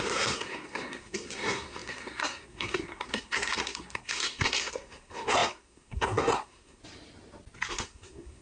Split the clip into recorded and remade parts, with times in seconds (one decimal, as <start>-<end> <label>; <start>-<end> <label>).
0.0-6.8 remade; 6.8-7.7 recorded; 7.7-8.4 remade